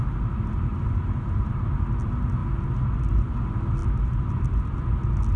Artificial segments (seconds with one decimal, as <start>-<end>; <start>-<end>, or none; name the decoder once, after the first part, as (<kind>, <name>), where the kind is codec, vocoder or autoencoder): 0.7-1.5 (vocoder, BigVGAN v2)